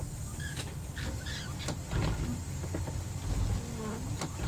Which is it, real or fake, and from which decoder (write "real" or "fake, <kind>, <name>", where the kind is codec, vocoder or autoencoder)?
real